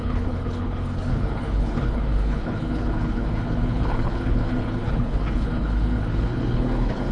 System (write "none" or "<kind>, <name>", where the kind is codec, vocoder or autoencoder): codec, HILCodec